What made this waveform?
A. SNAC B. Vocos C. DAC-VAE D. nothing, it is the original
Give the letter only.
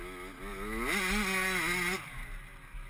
D